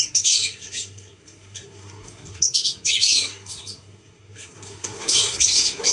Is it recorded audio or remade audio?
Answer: remade